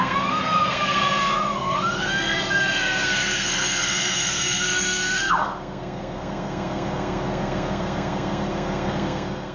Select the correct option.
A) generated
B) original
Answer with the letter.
A